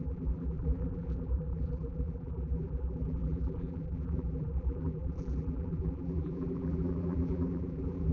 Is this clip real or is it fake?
fake